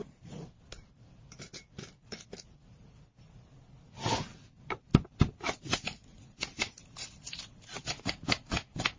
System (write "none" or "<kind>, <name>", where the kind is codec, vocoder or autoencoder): none